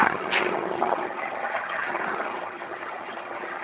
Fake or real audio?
fake